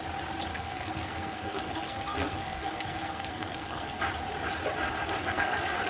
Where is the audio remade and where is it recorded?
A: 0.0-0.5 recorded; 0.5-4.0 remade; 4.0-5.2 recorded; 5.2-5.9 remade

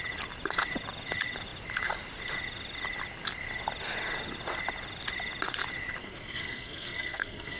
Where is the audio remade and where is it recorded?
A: 0.0-6.0 recorded; 6.0-7.6 remade

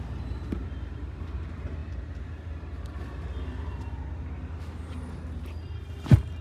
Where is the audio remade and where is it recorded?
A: 0.0-6.4 recorded

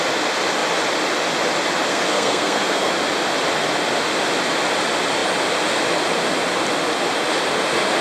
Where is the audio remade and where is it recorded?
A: 0.0-1.9 recorded; 1.9-2.9 remade; 2.9-8.0 recorded